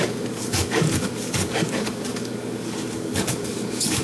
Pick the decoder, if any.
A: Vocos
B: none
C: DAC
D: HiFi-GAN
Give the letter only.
C